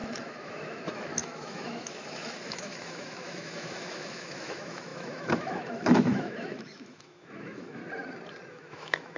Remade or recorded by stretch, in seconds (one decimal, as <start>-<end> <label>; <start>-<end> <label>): 0.0-7.8 remade; 7.8-8.5 recorded; 8.5-9.2 remade

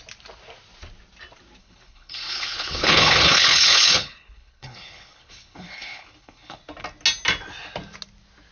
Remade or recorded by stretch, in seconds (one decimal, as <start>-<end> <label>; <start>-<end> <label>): 0.0-1.6 recorded; 1.6-6.6 remade; 6.6-8.5 recorded

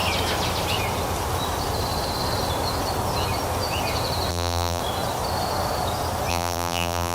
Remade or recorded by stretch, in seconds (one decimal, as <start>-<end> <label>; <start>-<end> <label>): 0.0-4.3 recorded; 4.3-4.8 remade; 4.8-6.3 recorded; 6.3-7.1 remade

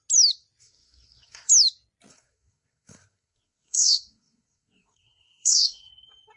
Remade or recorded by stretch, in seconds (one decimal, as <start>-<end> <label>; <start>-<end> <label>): 0.0-0.6 recorded; 0.6-1.5 remade; 1.5-2.1 recorded; 2.1-5.9 remade; 5.9-6.4 recorded

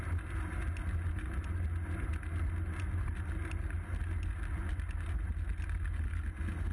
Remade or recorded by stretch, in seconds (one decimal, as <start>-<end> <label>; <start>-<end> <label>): 0.0-6.7 recorded

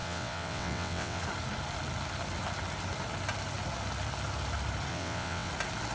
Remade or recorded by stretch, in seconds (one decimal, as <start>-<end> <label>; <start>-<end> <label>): 0.0-1.2 remade; 1.2-4.9 recorded; 4.9-5.5 remade; 5.5-5.9 recorded

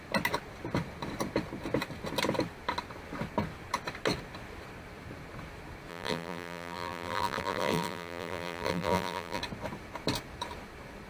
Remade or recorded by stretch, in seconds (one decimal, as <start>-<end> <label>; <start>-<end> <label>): 0.0-5.9 recorded; 5.9-9.4 remade; 9.4-11.1 recorded